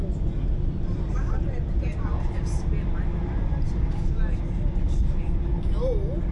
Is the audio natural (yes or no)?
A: yes